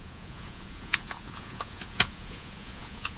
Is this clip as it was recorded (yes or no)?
no